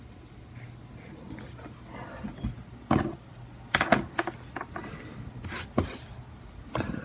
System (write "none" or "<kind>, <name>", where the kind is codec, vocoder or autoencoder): none